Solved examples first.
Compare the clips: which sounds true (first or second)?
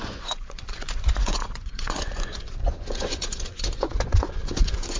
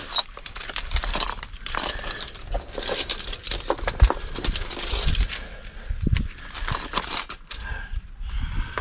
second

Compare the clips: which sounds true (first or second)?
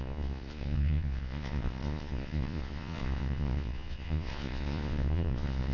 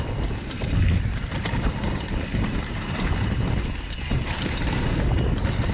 second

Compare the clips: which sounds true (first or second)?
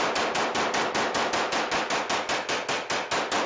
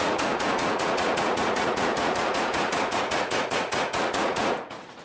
first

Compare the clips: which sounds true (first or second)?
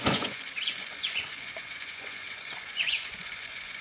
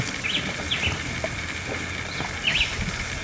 second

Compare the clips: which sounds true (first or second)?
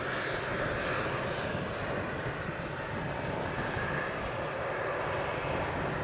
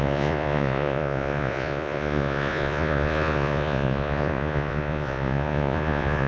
first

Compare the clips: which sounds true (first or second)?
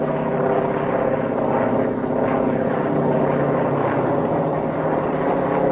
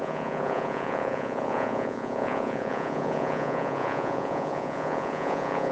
first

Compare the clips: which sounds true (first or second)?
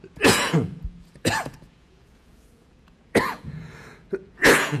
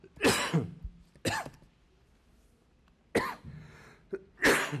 second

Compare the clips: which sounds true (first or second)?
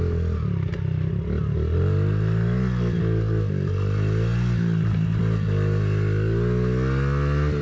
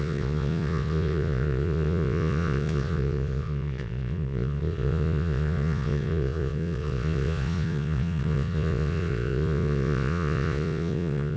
first